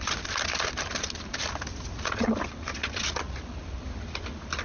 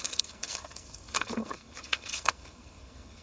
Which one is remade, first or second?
second